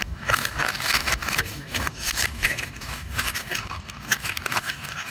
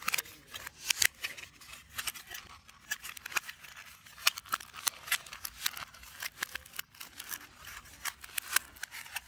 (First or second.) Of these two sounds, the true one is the second